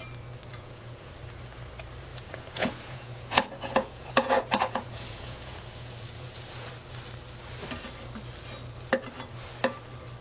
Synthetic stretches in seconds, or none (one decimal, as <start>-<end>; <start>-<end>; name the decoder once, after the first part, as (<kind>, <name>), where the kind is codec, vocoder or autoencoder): 0.5-1.1 (vocoder, Vocos); 2.1-6.7